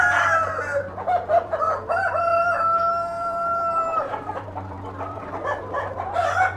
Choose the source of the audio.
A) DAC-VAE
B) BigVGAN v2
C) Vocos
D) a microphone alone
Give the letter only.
B